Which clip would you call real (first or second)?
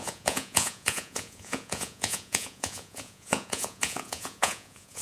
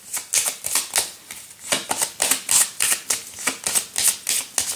second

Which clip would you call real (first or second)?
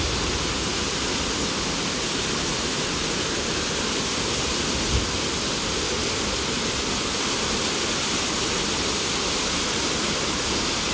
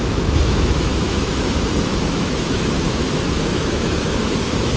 first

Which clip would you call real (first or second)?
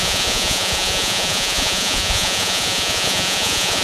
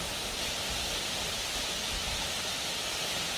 second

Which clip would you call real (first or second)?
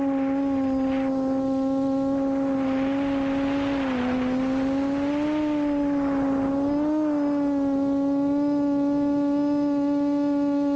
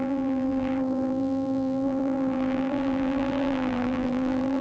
first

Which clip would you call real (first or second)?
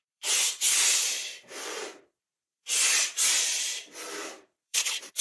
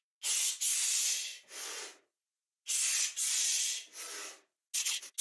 second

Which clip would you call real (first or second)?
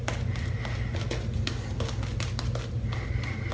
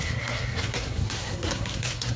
first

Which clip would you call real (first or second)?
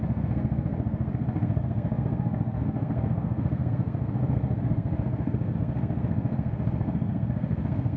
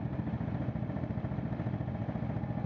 second